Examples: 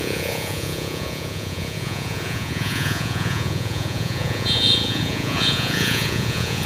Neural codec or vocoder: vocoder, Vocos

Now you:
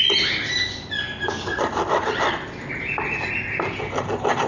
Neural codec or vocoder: none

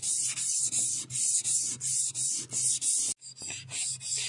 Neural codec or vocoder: none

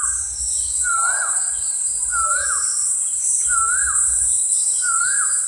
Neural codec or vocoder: vocoder, BigVGAN v2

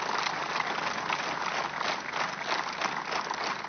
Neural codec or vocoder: none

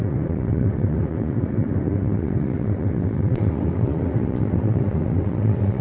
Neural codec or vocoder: vocoder, WaveNeXt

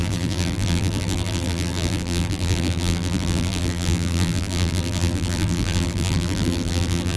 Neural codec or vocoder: vocoder, BigVGAN v2